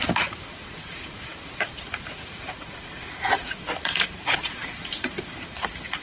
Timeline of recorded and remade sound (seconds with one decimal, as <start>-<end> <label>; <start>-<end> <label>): 0.0-6.0 remade

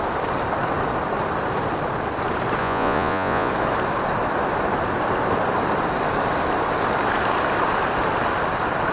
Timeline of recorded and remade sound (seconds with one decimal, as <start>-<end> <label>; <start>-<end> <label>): 0.0-2.6 recorded; 2.6-3.5 remade; 3.5-8.9 recorded

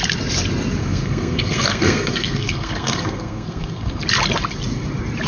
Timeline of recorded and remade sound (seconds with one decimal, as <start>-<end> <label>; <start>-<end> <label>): 0.0-0.8 recorded; 0.8-4.0 remade; 4.0-5.3 recorded